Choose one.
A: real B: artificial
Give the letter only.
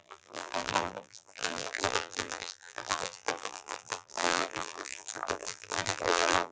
B